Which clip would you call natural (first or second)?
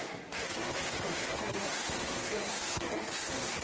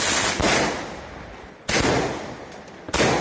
second